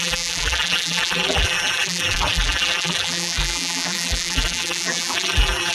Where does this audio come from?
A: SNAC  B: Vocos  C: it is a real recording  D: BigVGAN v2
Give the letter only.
D